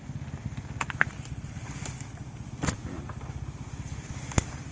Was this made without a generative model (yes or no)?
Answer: yes